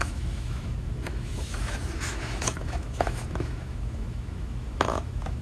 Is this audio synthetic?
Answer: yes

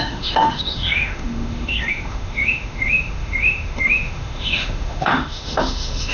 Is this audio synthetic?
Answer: yes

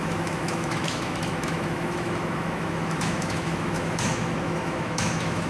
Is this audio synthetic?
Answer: yes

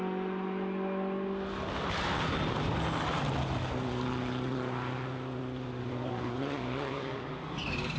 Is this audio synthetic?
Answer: no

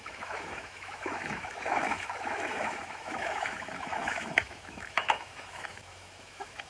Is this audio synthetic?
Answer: yes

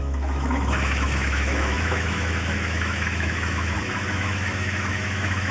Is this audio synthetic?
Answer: yes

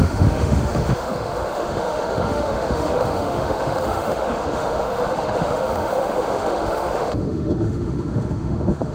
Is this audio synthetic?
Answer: yes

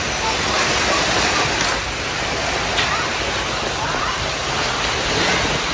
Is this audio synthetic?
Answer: no